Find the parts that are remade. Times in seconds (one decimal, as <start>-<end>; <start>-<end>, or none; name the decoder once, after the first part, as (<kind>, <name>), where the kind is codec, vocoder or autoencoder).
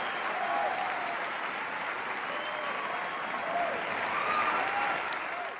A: none